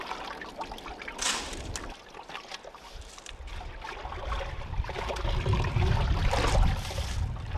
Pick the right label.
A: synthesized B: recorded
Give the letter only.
B